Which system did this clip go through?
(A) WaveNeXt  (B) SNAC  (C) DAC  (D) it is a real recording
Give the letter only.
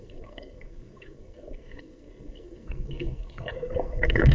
B